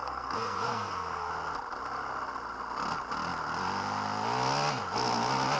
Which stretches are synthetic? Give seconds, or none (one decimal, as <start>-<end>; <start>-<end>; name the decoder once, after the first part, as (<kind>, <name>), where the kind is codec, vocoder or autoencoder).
0.0-1.3 (codec, SNAC)